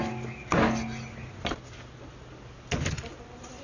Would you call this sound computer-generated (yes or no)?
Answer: no